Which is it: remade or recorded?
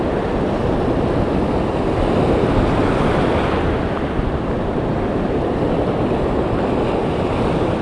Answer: recorded